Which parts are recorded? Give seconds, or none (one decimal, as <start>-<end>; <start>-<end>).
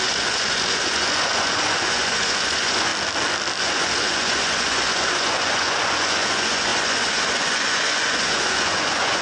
2.9-3.6